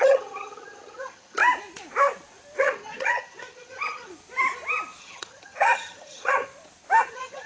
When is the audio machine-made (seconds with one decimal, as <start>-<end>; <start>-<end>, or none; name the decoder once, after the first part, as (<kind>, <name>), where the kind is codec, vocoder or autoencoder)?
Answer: 0.0-1.4 (vocoder, HiFi-GAN); 2.6-4.1; 5.0-6.5; 7.1-7.5